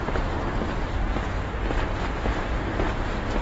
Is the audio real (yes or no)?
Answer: yes